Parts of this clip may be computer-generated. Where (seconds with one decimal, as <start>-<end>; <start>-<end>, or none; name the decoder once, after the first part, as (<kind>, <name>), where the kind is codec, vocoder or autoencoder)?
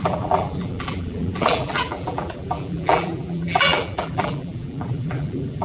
0.0-5.6 (vocoder, BigVGAN v2)